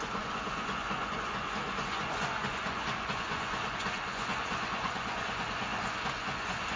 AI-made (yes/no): yes